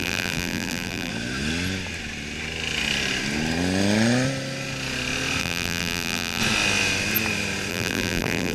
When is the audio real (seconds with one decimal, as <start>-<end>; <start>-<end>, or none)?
1.1-5.4; 6.4-7.7